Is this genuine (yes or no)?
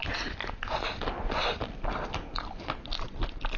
yes